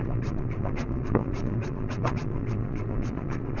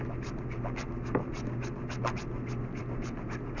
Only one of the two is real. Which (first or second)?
second